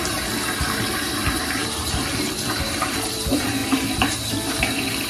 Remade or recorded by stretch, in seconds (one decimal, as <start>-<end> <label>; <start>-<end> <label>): 0.0-5.1 remade